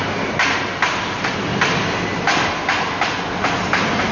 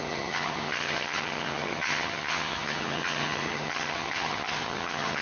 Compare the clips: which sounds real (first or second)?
first